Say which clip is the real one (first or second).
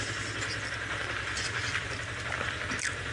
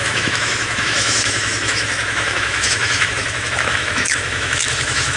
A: first